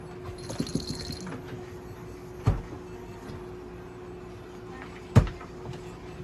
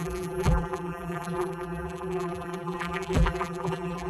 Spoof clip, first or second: second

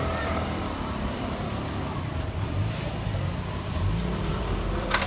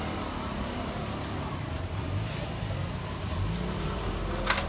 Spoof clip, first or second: first